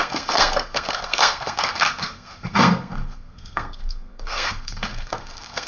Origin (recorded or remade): remade